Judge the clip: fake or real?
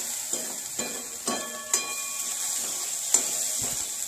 real